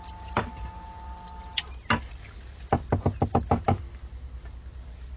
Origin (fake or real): real